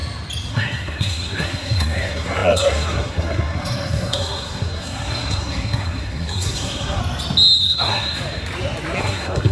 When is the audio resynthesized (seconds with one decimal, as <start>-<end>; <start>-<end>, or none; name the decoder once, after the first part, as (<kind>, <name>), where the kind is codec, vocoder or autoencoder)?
0.5-7.0 (codec, SNAC); 7.6-8.2; 9.0-9.5